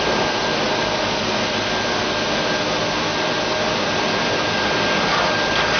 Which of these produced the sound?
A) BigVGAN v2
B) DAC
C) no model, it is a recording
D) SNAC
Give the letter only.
C